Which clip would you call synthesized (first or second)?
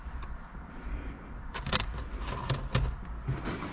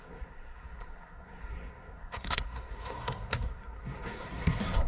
second